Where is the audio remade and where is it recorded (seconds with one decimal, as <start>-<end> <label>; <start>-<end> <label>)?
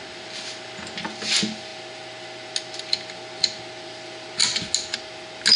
0.0-5.6 recorded